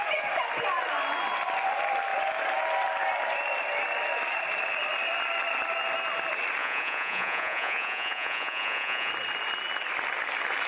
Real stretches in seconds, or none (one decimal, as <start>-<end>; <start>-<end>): 0.0-6.6; 9.1-10.7